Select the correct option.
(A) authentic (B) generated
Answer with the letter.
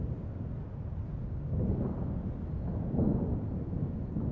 A